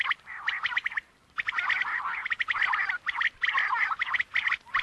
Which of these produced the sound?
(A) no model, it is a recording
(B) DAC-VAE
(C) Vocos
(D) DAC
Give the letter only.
A